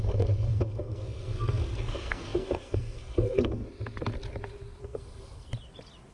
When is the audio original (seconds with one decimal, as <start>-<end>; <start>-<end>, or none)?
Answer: 3.6-4.8; 5.5-6.1